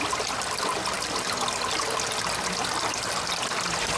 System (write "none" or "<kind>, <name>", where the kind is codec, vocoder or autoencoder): none